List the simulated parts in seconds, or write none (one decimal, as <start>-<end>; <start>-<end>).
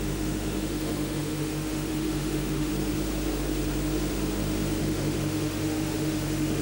0.0-2.7; 4.8-6.6